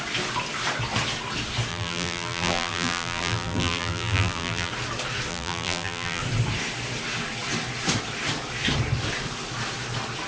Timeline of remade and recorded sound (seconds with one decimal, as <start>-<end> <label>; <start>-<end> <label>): 0.0-1.7 recorded; 1.7-4.7 remade; 4.7-5.3 recorded; 5.3-6.2 remade; 6.2-10.3 recorded